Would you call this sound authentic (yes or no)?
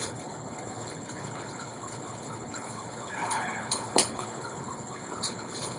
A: no